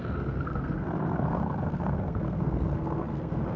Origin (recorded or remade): remade